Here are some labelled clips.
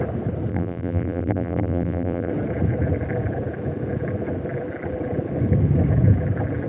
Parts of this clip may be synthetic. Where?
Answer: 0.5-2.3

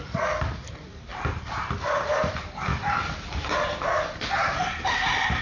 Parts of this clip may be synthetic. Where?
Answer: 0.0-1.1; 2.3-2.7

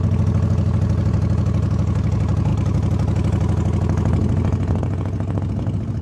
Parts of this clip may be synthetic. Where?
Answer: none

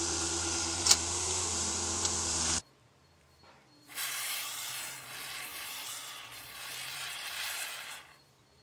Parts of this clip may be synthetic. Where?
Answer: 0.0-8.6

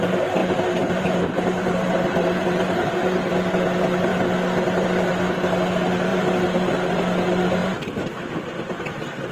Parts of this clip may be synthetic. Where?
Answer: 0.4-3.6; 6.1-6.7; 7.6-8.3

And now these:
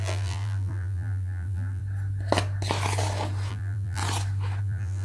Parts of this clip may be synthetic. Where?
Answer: 0.0-1.8; 3.5-4.0; 4.6-5.0